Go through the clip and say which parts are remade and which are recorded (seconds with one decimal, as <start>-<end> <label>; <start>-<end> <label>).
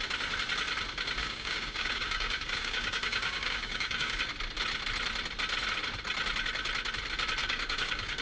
0.0-1.2 recorded; 1.2-4.2 remade; 4.2-7.4 recorded; 7.4-8.2 remade